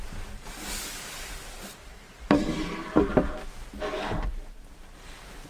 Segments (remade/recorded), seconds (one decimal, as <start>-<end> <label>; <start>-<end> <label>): 0.0-1.8 remade; 1.8-4.3 recorded; 4.3-5.5 remade